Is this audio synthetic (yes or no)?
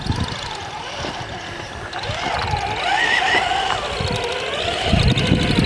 no